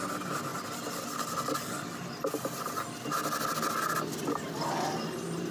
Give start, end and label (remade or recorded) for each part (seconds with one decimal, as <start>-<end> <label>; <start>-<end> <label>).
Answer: 0.0-5.5 recorded